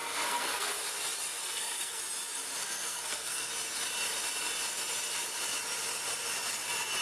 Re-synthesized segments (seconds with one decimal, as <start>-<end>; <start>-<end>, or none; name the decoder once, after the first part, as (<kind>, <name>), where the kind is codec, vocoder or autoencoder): 0.0-0.8 (codec, SNAC); 1.4-2.0; 2.6-3.5